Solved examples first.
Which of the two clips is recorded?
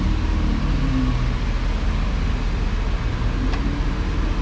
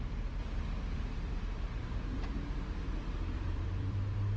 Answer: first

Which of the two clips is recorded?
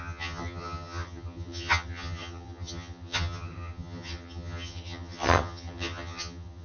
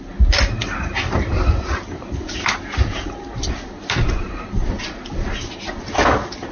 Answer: second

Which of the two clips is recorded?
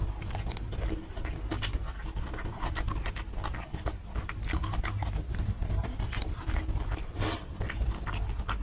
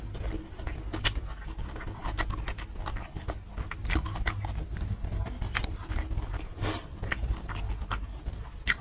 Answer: second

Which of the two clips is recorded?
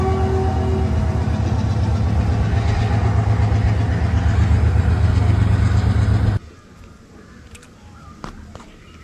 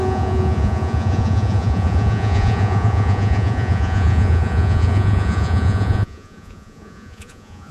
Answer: first